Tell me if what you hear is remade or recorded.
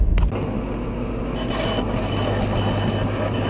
recorded